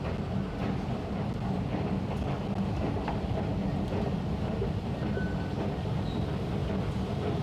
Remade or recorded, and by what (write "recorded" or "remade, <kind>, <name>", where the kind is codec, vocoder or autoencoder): recorded